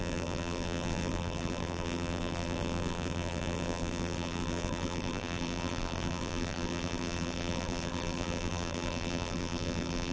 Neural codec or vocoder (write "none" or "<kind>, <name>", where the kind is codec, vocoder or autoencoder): vocoder, BigVGAN v2